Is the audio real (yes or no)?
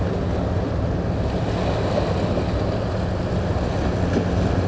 yes